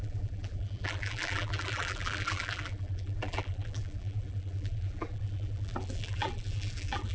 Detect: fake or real fake